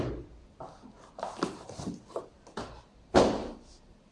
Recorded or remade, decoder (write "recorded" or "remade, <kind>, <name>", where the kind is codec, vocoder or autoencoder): recorded